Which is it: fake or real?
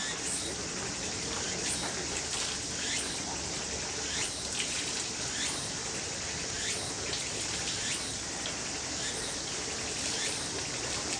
real